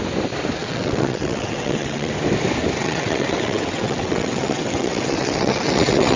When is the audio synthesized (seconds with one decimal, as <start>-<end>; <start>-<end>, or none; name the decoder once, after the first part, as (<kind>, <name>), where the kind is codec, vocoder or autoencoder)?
0.6-2.1 (vocoder, WaveNeXt); 2.8-6.2